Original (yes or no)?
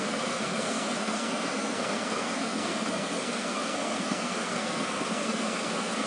no